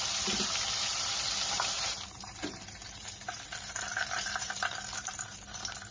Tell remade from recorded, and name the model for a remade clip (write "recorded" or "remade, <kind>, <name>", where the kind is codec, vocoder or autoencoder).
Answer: remade, vocoder, BigVGAN v2